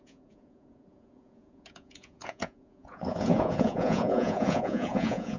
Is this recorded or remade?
remade